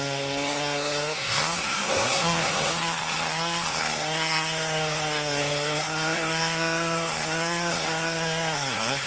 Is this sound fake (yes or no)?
yes